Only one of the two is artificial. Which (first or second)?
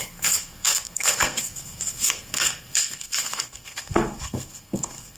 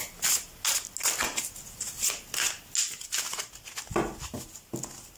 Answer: first